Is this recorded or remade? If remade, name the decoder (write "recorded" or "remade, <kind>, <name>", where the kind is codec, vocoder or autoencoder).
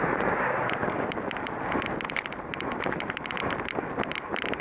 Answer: recorded